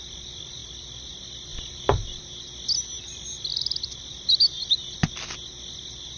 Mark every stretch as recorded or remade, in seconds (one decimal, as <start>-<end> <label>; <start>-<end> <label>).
0.0-0.6 recorded; 0.6-1.1 remade; 1.1-1.5 recorded; 1.5-2.2 remade; 2.2-3.5 recorded; 3.5-4.0 remade; 4.0-6.2 recorded